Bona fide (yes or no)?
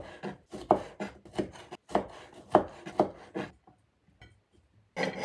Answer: yes